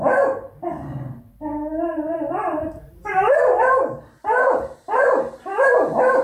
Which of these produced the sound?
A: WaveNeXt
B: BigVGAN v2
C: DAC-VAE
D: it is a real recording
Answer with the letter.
B